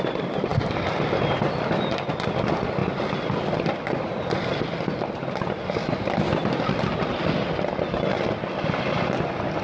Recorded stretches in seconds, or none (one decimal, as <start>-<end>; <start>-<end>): 0.0-9.6